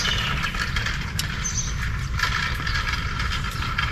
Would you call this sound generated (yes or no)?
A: no